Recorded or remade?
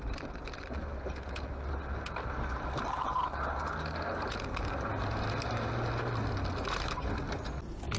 recorded